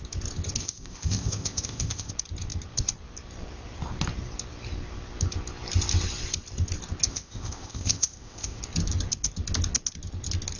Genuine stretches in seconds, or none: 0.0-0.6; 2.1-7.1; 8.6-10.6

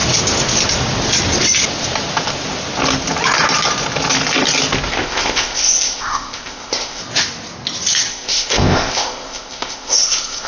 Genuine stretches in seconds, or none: 0.0-4.9; 7.0-8.1

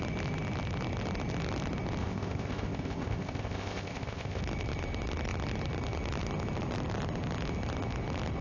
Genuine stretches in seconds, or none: 0.0-2.0; 4.4-8.4

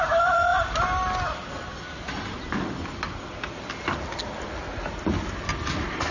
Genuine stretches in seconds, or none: 0.0-6.1

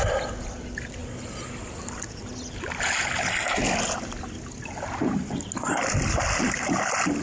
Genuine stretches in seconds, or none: 0.0-7.2

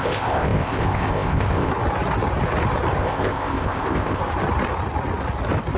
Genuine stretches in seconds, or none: 1.7-3.0; 4.2-5.8